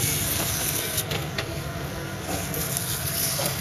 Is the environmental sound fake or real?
fake